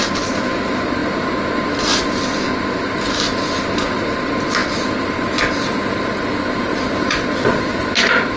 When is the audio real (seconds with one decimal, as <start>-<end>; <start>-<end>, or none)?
0.0-8.4